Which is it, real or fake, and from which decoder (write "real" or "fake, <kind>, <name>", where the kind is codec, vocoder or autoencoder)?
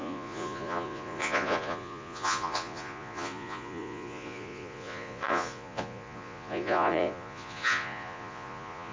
fake, vocoder, Vocos